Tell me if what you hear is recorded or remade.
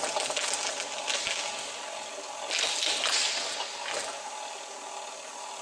recorded